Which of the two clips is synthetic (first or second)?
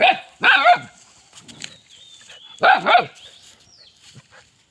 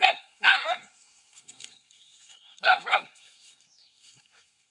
second